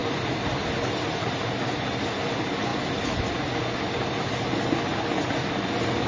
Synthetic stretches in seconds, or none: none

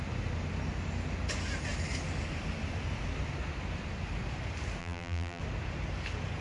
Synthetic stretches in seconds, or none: 4.8-5.4

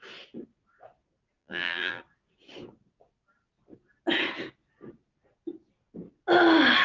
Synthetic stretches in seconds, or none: 1.4-2.0

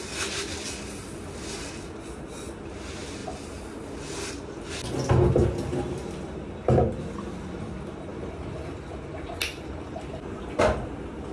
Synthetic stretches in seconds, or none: 8.1-10.6

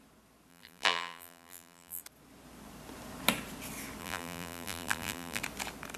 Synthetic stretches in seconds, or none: 0.5-2.0; 4.0-5.4